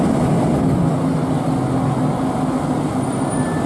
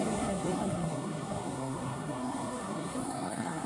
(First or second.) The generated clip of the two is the second